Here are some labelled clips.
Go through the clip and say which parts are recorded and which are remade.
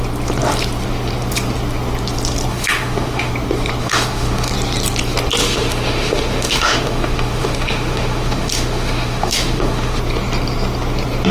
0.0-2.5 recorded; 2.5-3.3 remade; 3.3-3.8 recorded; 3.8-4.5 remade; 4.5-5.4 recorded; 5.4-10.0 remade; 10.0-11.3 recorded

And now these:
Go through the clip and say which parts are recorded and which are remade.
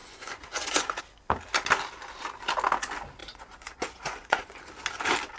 0.0-1.0 remade; 1.0-3.2 recorded; 3.2-4.6 remade; 4.6-5.4 recorded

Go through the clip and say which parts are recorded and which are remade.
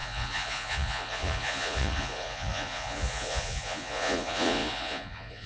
0.0-5.5 remade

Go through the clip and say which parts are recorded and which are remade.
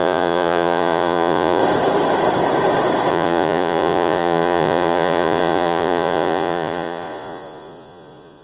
0.0-1.6 remade; 1.6-3.1 recorded; 3.1-8.4 remade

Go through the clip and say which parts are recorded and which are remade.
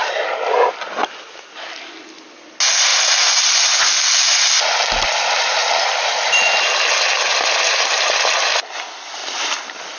0.0-5.6 recorded; 5.6-6.5 remade; 6.5-9.2 recorded; 9.2-10.0 remade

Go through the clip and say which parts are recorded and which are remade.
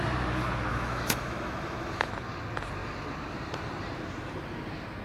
0.0-0.7 recorded; 0.7-2.1 remade; 2.1-5.0 recorded